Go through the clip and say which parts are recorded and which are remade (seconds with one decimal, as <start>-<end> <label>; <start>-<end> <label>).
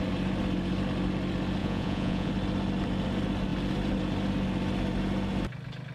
0.0-1.6 recorded; 1.6-2.3 remade; 2.3-5.9 recorded